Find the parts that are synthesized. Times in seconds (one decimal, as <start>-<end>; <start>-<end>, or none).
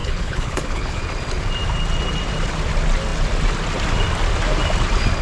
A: 0.0-1.0